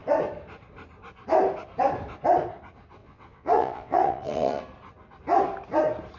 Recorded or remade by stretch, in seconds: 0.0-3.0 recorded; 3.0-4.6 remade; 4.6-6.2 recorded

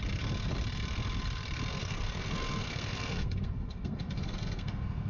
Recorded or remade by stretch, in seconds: 0.0-1.8 recorded; 1.8-5.1 remade

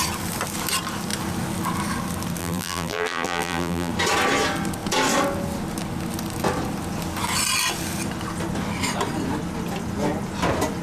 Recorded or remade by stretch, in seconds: 0.0-2.4 recorded; 2.4-3.9 remade; 3.9-10.8 recorded

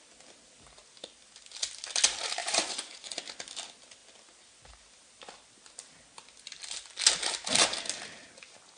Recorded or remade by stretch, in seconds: 0.0-2.4 recorded; 2.4-3.2 remade; 3.2-8.8 recorded

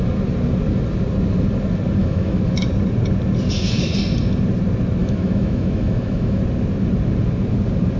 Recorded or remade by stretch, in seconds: 0.0-2.0 recorded; 2.0-2.7 remade; 2.7-5.0 recorded; 5.0-6.4 remade; 6.4-8.0 recorded

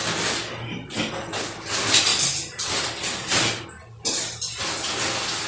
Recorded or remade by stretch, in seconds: 0.0-5.5 recorded

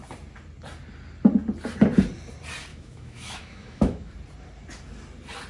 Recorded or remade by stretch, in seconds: 0.0-2.7 recorded; 2.7-4.1 remade; 4.1-5.5 recorded